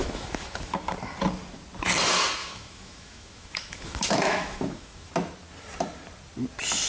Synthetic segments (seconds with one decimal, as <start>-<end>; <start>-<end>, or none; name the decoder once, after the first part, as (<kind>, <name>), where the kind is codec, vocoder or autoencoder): 0.0-0.6 (autoencoder, DAC-VAE); 2.4-5.1

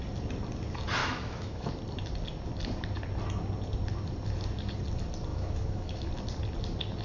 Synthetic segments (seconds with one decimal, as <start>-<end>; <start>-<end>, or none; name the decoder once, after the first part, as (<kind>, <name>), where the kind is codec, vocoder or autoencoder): 1.0-1.7 (autoencoder, DAC-VAE); 5.3-6.1

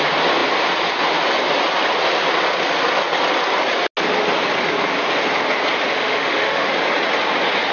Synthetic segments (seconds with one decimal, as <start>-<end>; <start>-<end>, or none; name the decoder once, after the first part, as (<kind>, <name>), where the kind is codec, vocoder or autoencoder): 5.9-6.7 (autoencoder, DAC-VAE)

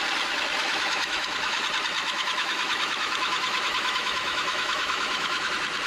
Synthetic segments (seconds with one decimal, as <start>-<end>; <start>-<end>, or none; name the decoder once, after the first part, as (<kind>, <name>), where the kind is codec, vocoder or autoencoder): 0.6-1.6 (autoencoder, DAC-VAE); 2.0-5.5

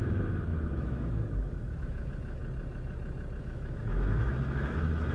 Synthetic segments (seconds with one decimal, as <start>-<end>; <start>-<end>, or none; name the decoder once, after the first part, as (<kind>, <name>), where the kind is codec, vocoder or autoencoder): 0.0-2.4 (autoencoder, DAC-VAE); 3.4-5.1

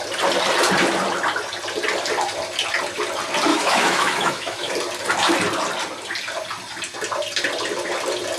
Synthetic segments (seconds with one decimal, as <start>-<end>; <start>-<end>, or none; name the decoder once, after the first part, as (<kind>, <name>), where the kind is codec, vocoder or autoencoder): 3.5-4.7 (autoencoder, DAC-VAE)